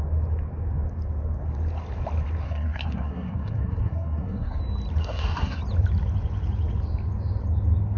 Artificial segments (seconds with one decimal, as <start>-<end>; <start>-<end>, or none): 2.4-4.6; 5.0-5.6